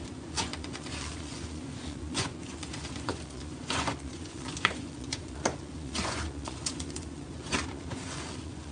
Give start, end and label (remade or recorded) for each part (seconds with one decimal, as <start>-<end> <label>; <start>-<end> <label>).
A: 0.0-8.7 remade